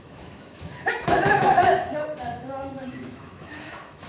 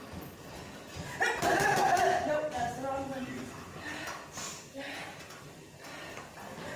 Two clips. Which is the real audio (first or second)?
second